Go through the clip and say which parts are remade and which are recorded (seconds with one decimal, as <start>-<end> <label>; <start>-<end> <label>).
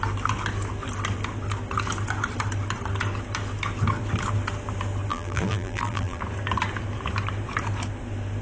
0.0-5.1 recorded; 5.1-6.2 remade; 6.2-8.4 recorded